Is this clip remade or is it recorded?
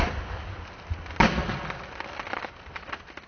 recorded